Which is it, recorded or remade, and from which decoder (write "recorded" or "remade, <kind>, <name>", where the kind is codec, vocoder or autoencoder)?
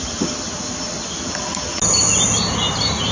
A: recorded